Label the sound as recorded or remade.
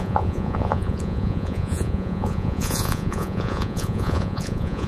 remade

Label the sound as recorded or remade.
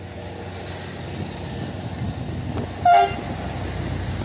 recorded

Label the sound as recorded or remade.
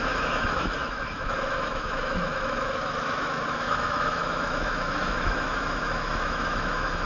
remade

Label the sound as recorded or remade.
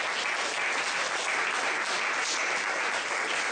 recorded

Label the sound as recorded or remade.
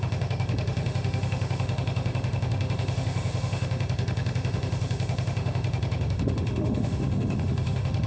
remade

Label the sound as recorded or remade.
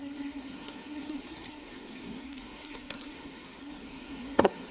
remade